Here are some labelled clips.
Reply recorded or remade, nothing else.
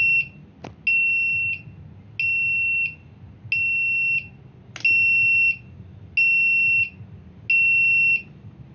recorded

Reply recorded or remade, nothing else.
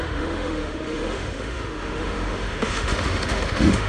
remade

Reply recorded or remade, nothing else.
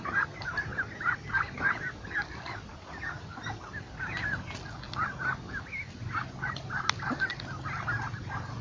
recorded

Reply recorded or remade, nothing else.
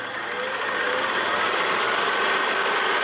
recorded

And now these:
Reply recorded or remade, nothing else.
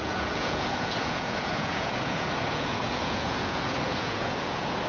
remade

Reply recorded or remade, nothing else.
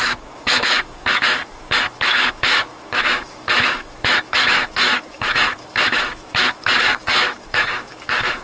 remade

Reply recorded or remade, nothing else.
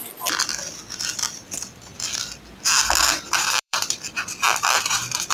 remade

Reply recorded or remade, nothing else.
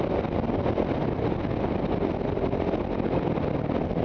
recorded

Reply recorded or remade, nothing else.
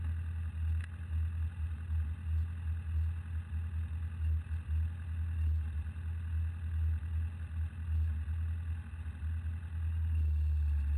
recorded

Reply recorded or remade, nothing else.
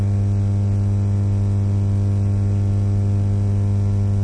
recorded